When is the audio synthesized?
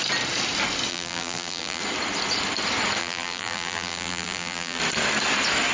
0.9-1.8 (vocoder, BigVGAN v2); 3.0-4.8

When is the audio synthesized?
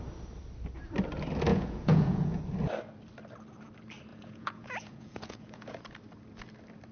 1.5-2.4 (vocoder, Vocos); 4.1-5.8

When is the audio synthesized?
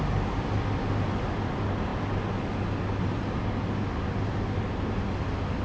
none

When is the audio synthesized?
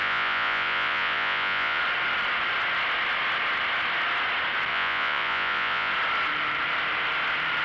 0.0-1.8 (vocoder, Vocos); 4.7-5.9